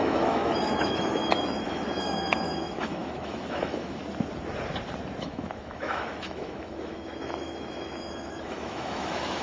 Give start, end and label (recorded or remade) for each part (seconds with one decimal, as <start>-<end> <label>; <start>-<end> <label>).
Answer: 0.0-4.0 remade; 4.0-5.2 recorded; 5.2-9.4 remade